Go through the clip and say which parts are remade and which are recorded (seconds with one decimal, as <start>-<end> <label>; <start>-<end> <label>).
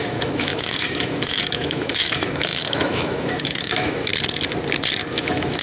0.0-4.1 remade; 4.1-5.0 recorded; 5.0-5.6 remade